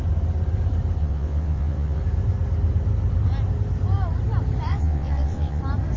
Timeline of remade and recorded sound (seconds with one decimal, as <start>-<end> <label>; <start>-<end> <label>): 0.0-1.0 recorded; 1.0-2.0 remade; 2.0-4.7 recorded; 4.7-5.6 remade; 5.6-6.0 recorded